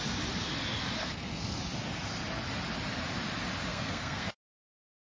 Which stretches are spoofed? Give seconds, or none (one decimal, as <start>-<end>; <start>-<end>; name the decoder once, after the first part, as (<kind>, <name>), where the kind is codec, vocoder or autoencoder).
1.0-1.6 (codec, SNAC); 3.7-4.5